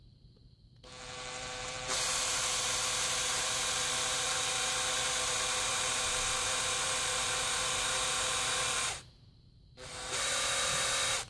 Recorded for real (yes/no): no